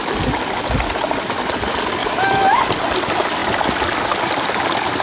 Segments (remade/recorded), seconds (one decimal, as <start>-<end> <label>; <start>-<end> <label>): 0.0-2.0 recorded; 2.0-2.6 remade; 2.6-5.0 recorded